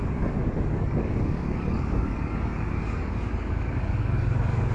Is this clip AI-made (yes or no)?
yes